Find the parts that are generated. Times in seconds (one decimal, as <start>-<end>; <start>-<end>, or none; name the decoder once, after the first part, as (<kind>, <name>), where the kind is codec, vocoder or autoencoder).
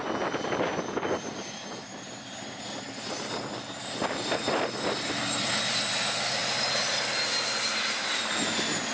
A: none